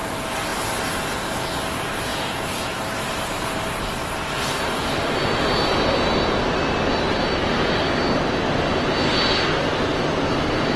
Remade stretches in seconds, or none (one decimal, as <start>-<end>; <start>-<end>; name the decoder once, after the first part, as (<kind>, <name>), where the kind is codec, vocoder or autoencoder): 2.1-2.8 (vocoder, Vocos)